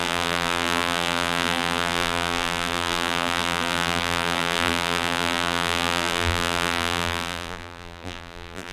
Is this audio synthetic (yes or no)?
yes